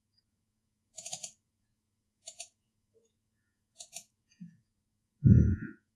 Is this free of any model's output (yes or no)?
no